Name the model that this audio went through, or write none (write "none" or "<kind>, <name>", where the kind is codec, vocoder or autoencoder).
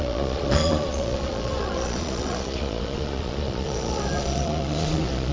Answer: vocoder, Vocos